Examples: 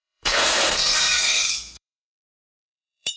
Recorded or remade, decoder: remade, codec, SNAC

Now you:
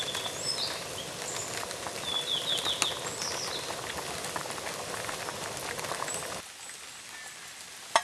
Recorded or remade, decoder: recorded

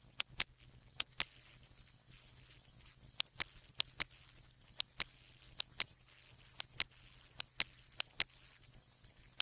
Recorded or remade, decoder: recorded